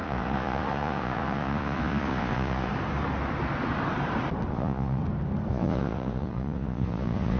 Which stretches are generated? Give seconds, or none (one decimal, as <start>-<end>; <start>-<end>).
0.0-2.7; 4.5-5.0; 5.5-7.4